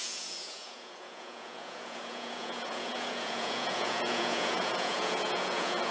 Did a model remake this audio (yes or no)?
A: yes